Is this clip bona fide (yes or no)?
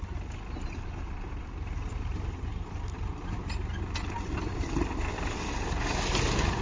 yes